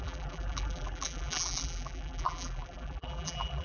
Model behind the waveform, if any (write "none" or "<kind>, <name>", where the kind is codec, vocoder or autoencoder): vocoder, BigVGAN v2